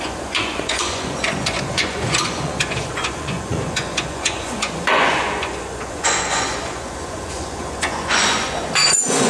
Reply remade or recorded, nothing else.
remade